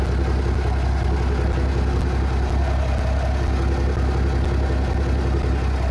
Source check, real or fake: real